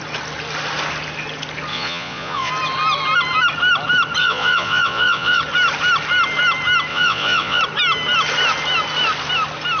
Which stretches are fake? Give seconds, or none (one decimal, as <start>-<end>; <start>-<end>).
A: 1.7-2.5; 4.2-5.4; 6.9-7.6